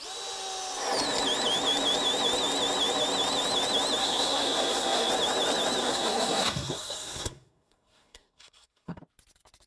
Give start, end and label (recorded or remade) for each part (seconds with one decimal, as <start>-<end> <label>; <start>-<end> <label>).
0.0-4.0 recorded; 4.0-5.1 remade; 5.1-5.8 recorded; 5.8-9.0 remade; 9.0-9.7 recorded